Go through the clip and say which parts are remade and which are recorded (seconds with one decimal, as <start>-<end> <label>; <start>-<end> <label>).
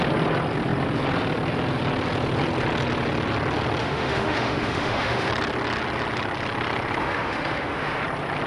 0.0-3.8 recorded; 3.8-5.3 remade; 5.3-7.0 recorded; 7.0-8.0 remade; 8.0-8.5 recorded